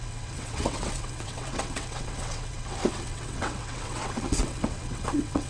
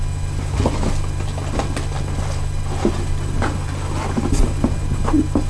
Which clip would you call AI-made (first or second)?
first